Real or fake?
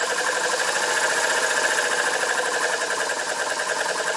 real